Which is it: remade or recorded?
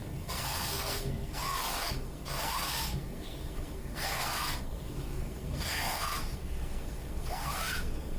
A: remade